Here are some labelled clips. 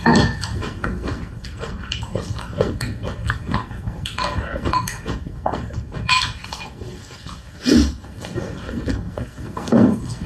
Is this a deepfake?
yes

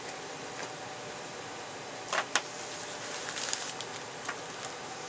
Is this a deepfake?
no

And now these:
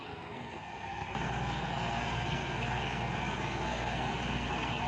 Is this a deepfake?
yes